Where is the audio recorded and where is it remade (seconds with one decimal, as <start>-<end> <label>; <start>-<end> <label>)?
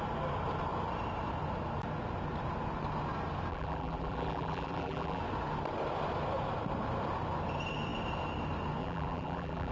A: 0.0-3.5 recorded; 3.5-5.2 remade; 5.2-8.8 recorded; 8.8-9.7 remade